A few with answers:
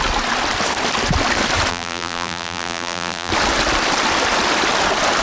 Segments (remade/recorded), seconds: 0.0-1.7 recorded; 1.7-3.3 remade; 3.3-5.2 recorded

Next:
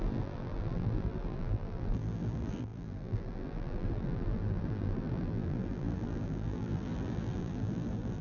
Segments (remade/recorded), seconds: 0.0-8.2 remade

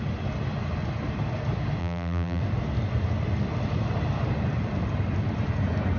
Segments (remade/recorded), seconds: 0.0-1.8 recorded; 1.8-2.4 remade; 2.4-6.0 recorded

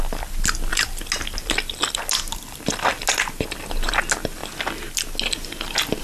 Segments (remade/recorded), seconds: 0.0-6.0 recorded

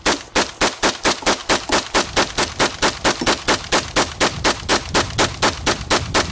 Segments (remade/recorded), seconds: 0.0-6.3 recorded